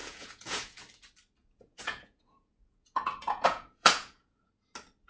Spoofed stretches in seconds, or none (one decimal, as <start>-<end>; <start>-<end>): 0.0-0.8; 1.4-4.5